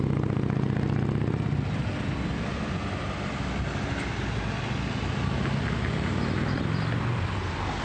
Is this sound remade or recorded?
recorded